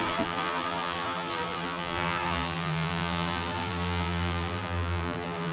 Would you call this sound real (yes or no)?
no